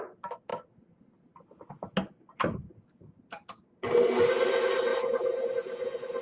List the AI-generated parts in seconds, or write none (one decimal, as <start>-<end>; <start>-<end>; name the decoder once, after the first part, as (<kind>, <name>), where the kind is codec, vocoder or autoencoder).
none